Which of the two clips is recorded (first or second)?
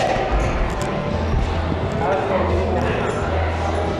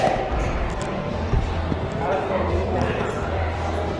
first